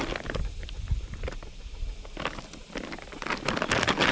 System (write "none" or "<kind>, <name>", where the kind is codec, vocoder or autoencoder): none